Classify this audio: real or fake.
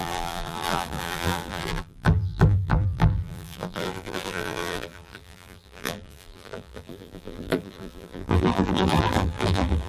fake